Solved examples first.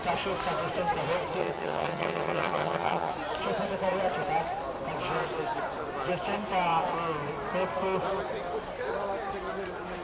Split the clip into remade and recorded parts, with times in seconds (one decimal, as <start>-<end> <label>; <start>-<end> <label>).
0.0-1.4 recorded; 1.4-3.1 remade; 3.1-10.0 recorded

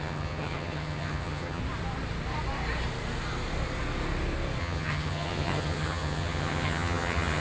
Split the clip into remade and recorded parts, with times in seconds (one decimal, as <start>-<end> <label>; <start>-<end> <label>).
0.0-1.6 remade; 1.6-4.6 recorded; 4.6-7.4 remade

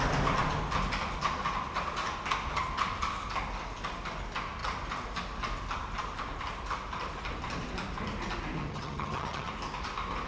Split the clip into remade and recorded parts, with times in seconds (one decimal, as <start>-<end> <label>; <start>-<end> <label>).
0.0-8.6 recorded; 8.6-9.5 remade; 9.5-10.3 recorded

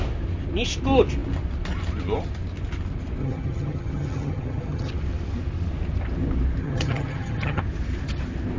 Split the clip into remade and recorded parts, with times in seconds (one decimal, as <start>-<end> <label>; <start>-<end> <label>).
0.0-3.2 recorded; 3.2-4.9 remade; 4.9-6.6 recorded; 6.6-7.6 remade; 7.6-8.6 recorded

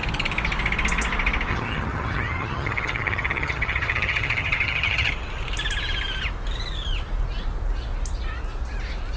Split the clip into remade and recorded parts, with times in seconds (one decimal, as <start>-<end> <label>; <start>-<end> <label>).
0.0-1.5 recorded; 1.5-5.1 remade; 5.1-9.2 recorded

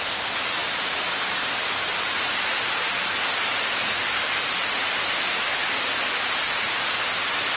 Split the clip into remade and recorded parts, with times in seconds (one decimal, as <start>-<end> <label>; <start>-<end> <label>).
0.0-7.6 recorded